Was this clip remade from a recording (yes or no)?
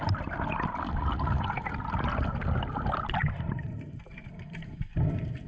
no